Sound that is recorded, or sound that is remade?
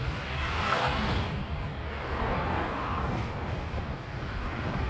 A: remade